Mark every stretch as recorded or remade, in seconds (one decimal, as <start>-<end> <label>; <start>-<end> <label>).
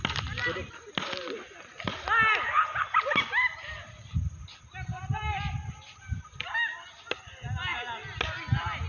0.0-8.9 recorded